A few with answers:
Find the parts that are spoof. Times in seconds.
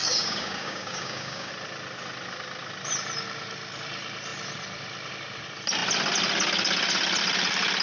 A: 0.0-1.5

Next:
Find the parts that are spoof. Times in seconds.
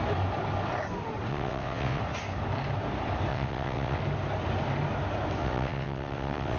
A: 1.3-2.0; 3.3-4.0; 5.4-6.6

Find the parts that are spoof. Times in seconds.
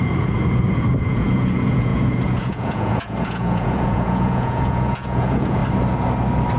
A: 0.0-5.6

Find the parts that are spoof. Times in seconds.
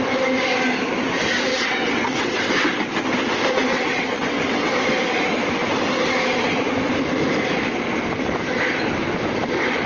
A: 1.5-2.5; 3.7-4.7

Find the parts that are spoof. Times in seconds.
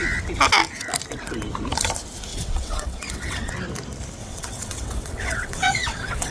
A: 2.3-3.5; 4.2-6.3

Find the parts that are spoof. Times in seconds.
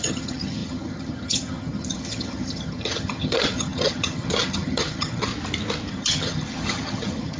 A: 0.0-5.3; 5.9-7.4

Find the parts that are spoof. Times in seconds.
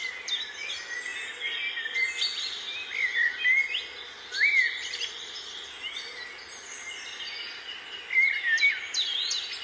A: none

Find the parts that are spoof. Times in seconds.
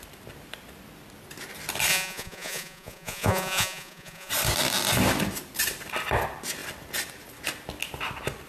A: 1.9-4.3